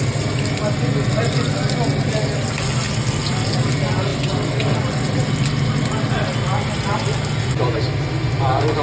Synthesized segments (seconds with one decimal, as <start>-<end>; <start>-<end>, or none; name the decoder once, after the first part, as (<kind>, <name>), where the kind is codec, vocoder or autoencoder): none